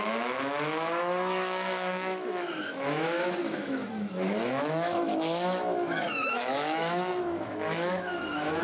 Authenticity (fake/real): fake